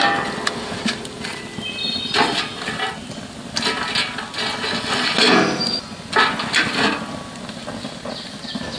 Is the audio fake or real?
real